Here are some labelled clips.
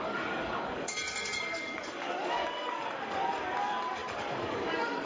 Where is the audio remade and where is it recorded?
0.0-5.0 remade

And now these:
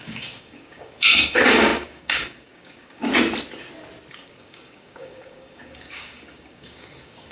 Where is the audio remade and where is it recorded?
0.0-3.0 remade; 3.0-4.1 recorded; 4.1-7.3 remade